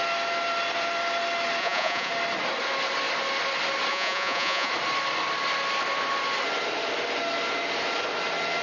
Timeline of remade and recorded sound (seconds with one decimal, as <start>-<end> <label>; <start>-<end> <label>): 0.0-1.6 recorded; 1.6-2.1 remade; 2.1-3.9 recorded; 3.9-4.7 remade; 4.7-8.6 recorded